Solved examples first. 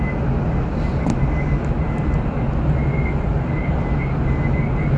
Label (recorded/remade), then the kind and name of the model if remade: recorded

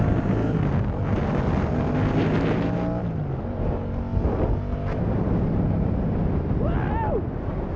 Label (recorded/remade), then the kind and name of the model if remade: recorded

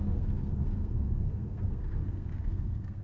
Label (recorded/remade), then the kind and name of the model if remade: remade, codec, SNAC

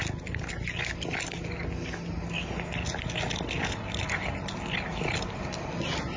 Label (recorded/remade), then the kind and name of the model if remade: recorded